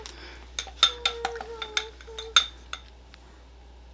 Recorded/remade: recorded